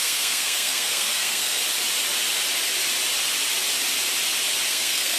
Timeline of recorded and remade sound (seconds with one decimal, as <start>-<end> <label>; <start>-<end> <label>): 0.0-1.6 remade; 1.6-4.7 recorded; 4.7-5.2 remade